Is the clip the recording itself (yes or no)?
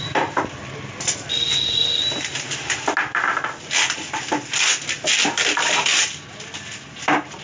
yes